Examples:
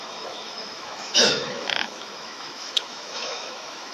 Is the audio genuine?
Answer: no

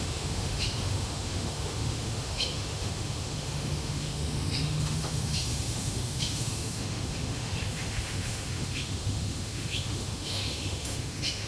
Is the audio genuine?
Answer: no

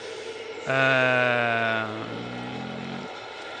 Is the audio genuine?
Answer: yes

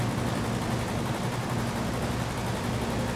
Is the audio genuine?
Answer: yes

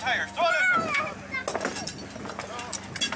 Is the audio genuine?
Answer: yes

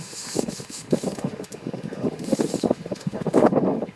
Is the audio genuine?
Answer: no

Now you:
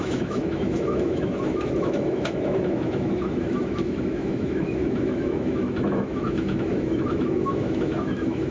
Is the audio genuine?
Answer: no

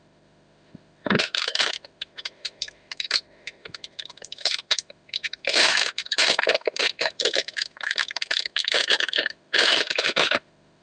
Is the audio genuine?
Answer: no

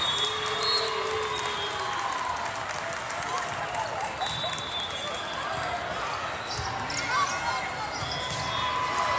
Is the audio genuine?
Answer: yes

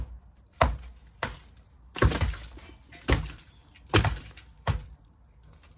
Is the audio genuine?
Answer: yes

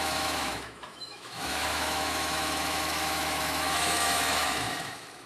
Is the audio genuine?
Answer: no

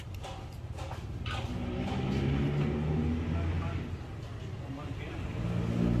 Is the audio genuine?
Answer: yes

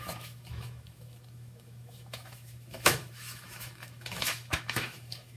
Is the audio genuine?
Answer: no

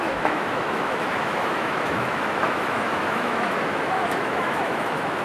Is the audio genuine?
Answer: no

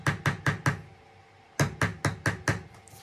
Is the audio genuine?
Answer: yes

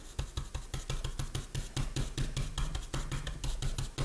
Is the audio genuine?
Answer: yes